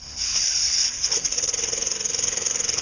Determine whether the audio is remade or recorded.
remade